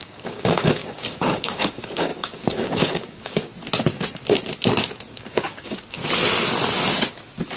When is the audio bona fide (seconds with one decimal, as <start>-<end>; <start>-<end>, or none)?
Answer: 3.5-5.1; 6.0-7.6